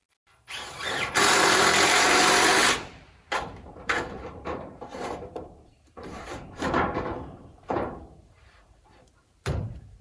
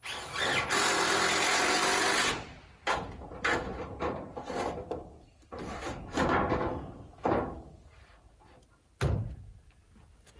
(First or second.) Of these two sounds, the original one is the second